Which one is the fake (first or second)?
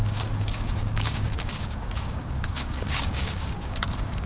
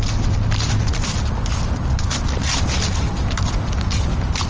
first